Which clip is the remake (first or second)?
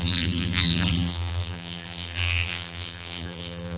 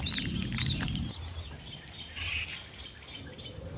first